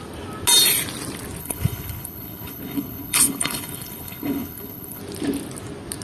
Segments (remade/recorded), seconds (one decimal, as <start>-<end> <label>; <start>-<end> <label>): 0.0-1.4 recorded; 1.4-5.0 remade; 5.0-6.0 recorded